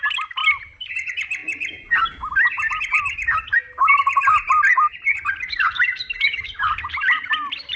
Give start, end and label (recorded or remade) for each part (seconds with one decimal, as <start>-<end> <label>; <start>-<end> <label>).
0.0-4.7 recorded; 4.7-7.3 remade; 7.3-7.8 recorded